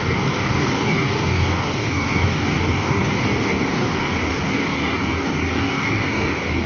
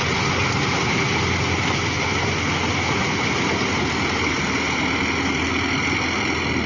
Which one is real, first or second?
second